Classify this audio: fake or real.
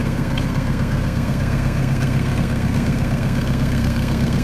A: fake